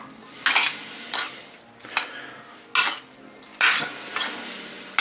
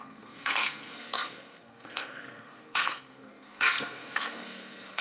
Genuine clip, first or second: first